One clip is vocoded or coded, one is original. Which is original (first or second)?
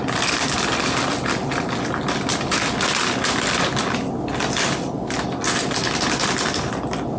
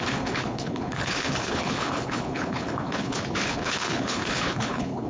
first